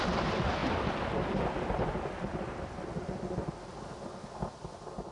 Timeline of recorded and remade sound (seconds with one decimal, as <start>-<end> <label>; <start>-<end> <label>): 0.0-5.1 recorded

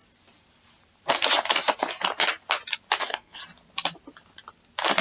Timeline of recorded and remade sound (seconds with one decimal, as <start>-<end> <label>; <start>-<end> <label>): 0.0-3.0 recorded; 3.0-3.4 remade; 3.4-5.0 recorded

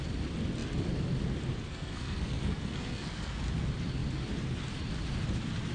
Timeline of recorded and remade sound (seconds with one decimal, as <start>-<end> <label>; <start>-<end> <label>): 0.0-1.7 recorded; 1.7-3.4 remade; 3.4-5.7 recorded

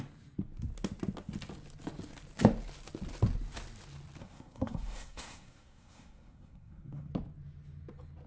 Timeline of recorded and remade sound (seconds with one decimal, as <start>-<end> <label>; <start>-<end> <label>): 0.0-4.2 recorded; 4.2-7.1 remade; 7.1-8.3 recorded

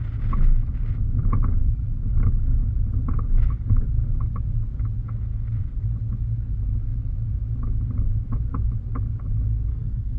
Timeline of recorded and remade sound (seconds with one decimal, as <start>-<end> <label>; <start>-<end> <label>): 0.0-9.7 recorded; 9.7-10.2 remade

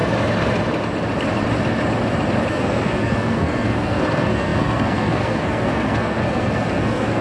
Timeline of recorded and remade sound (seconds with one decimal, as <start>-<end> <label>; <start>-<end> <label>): 0.0-2.5 recorded; 2.5-7.2 remade